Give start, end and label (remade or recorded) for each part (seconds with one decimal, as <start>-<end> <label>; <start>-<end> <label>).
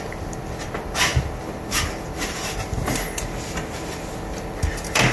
0.0-5.1 recorded